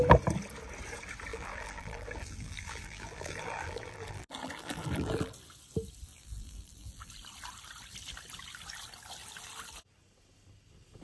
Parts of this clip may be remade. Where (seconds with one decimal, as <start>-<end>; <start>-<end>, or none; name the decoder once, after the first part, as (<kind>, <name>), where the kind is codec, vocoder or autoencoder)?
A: 1.3-5.3 (vocoder, BigVGAN v2); 6.1-7.1